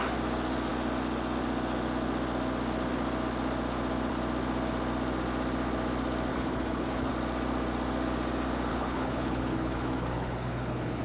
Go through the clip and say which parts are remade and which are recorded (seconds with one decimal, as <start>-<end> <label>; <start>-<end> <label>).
0.0-6.3 recorded; 6.3-7.1 remade; 7.1-8.7 recorded; 8.7-11.0 remade